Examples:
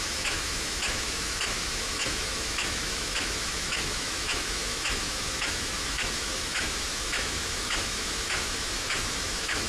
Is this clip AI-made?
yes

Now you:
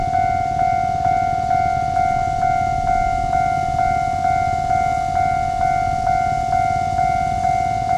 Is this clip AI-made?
no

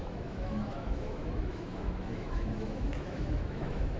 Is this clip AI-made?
yes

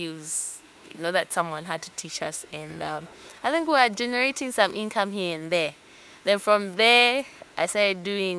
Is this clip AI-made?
yes